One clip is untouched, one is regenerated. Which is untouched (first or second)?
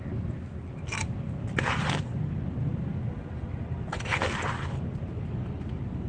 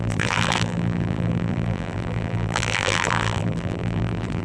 first